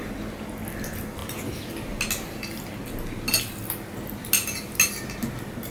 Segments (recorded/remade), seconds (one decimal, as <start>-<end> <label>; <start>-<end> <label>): 0.0-5.7 recorded